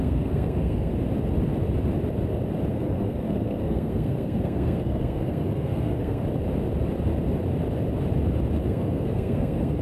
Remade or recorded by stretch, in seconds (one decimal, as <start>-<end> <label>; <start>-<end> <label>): 0.0-0.9 remade; 0.9-2.7 recorded; 2.7-6.2 remade; 6.2-8.6 recorded; 8.6-9.8 remade